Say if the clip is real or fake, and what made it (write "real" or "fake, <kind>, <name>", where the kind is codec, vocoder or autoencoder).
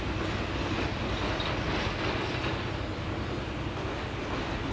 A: real